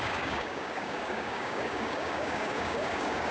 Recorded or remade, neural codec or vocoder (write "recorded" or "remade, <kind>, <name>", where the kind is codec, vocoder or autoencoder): remade, codec, DAC